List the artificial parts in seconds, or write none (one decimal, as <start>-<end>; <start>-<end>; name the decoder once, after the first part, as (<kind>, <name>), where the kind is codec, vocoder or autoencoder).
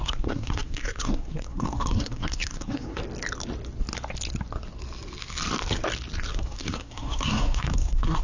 0.0-3.0 (codec, SNAC); 6.3-8.2